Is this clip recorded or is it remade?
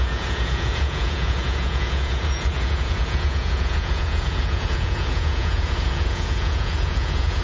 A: remade